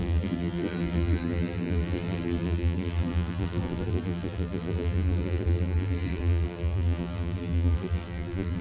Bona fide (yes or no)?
no